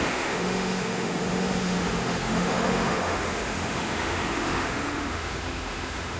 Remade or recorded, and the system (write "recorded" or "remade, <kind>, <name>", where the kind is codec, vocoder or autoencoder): remade, autoencoder, DAC-VAE